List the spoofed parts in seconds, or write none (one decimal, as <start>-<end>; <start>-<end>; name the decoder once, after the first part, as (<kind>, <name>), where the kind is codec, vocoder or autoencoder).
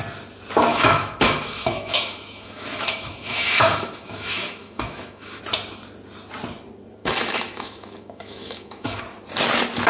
0.7-5.4 (autoencoder, DAC-VAE); 7.0-9.0